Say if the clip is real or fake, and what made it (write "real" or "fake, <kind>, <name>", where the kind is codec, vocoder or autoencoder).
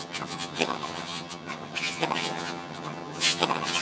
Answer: fake, vocoder, HiFi-GAN